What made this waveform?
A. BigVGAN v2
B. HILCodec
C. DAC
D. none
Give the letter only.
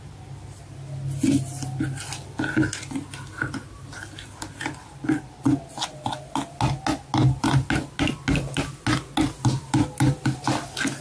D